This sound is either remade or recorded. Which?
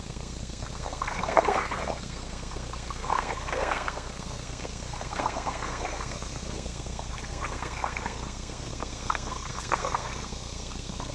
remade